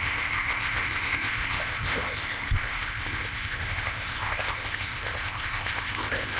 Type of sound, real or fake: fake